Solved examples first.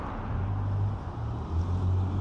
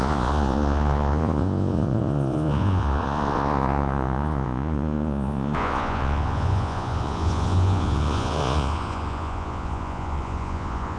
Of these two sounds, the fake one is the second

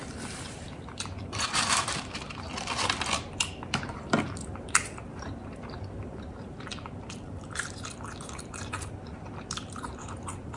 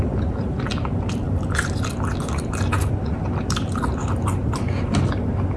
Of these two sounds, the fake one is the first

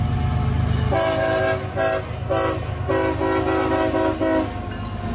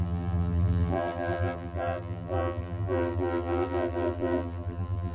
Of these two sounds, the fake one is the second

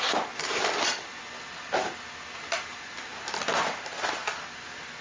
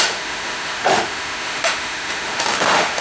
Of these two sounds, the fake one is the second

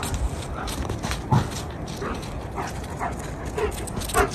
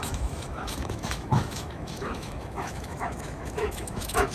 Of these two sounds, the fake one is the second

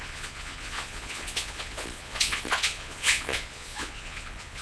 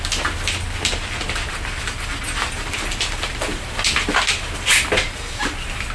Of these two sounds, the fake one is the first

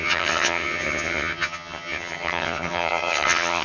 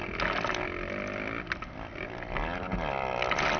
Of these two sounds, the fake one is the first